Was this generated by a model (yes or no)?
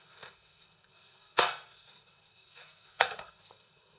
yes